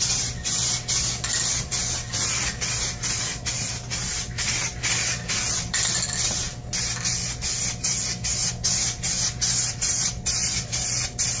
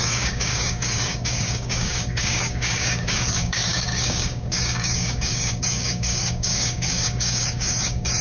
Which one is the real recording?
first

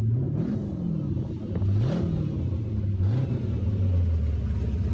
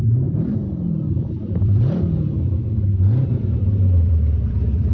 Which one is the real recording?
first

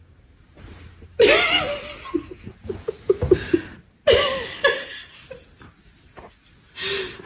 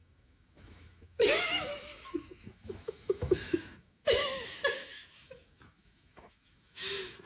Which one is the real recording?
first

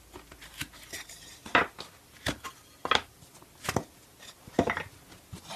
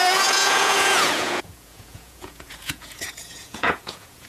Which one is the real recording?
first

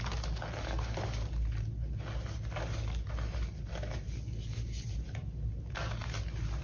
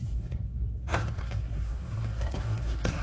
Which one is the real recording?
first